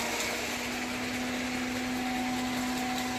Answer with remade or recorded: recorded